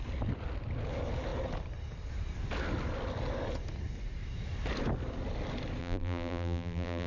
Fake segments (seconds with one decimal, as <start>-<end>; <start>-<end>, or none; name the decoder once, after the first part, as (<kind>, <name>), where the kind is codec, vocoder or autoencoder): 5.8-7.1 (vocoder, BigVGAN v2)